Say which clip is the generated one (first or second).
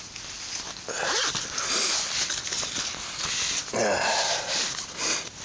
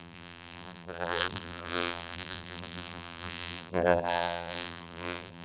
second